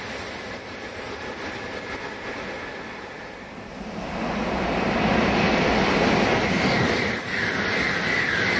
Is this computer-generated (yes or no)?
no